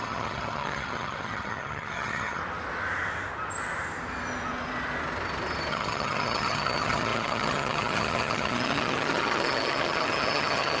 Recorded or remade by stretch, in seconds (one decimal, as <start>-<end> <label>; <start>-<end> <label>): 0.0-2.4 remade; 2.4-5.7 recorded; 5.7-10.8 remade